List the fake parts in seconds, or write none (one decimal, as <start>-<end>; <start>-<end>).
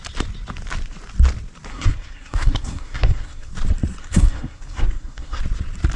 1.7-3.5; 4.0-5.4